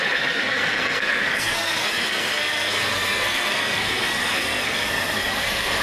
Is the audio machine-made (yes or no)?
yes